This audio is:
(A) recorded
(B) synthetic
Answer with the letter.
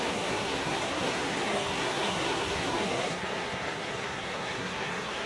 B